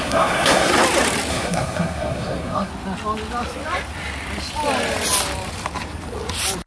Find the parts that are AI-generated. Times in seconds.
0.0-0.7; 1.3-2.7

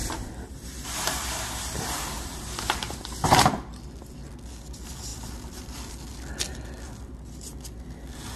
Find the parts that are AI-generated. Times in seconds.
0.0-3.0

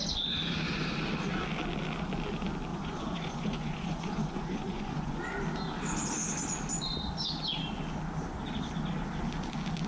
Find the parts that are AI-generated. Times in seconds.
2.7-5.2

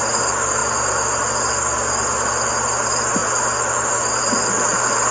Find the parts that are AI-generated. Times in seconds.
none

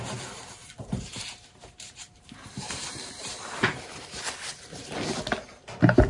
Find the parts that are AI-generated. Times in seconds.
0.6-4.2

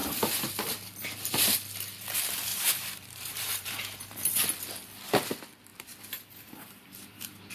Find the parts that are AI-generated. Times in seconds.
0.0-0.5; 2.5-4.3; 5.7-7.5